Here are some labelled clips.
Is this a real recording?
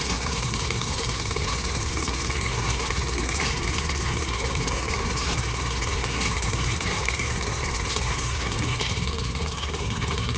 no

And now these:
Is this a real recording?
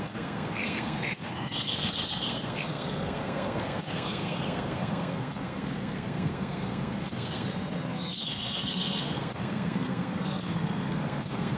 no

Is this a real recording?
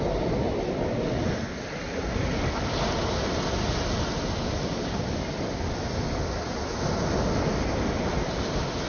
yes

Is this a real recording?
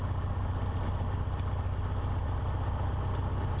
yes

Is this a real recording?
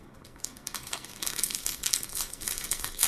no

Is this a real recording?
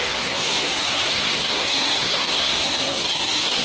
no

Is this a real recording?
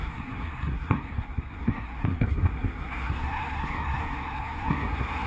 no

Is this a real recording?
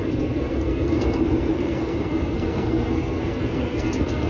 no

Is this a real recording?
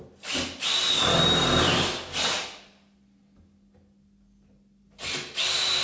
yes